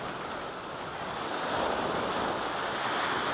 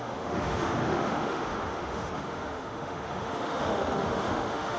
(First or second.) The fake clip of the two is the second